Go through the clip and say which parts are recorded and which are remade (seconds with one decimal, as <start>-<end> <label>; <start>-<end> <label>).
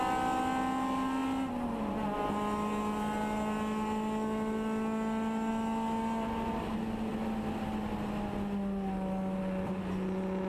0.0-10.5 recorded